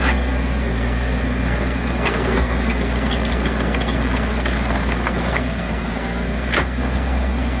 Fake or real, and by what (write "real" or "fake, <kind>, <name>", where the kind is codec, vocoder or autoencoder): fake, codec, SNAC